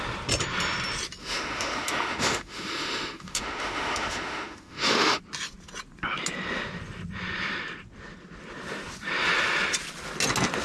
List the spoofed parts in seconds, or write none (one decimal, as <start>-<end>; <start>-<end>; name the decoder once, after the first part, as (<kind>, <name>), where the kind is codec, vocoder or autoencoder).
1.2-5.2 (autoencoder, DAC-VAE)